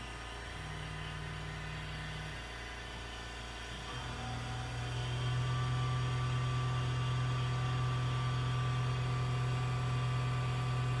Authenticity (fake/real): real